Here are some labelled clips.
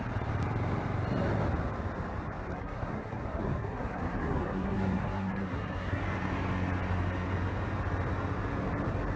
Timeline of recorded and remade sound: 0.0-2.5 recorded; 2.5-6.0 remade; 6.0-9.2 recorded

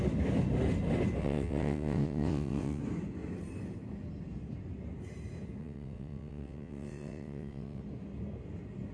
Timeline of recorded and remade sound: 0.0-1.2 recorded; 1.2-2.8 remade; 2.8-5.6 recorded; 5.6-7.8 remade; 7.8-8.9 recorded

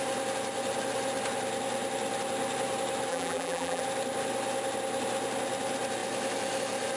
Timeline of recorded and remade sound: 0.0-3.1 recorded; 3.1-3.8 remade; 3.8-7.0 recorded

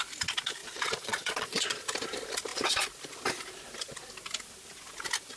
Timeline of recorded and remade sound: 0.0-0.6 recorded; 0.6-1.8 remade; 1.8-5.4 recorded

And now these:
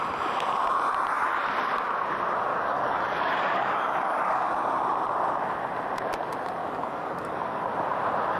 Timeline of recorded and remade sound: 0.0-2.5 recorded; 2.5-4.5 remade; 4.5-6.6 recorded; 6.6-7.6 remade; 7.6-8.4 recorded

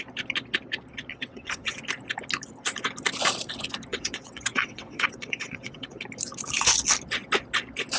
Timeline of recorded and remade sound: 0.0-1.1 recorded; 1.1-1.8 remade; 1.8-3.9 recorded; 3.9-6.0 remade; 6.0-8.0 recorded

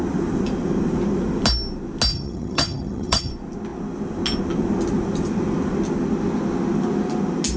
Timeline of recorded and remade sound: 0.0-2.1 recorded; 2.1-3.3 remade; 3.3-7.6 recorded